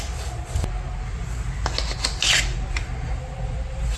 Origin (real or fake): real